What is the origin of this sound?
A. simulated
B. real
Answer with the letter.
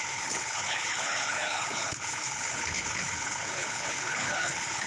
A